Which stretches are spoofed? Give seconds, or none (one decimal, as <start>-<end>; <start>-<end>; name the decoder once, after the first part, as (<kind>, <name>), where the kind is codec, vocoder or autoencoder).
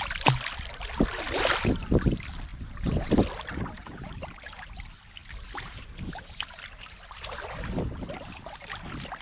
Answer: 2.5-3.1 (vocoder, BigVGAN v2); 3.8-4.6